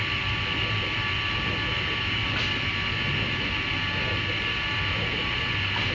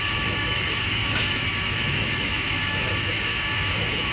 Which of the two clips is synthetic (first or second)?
second